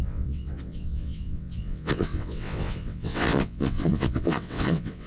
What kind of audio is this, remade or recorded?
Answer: remade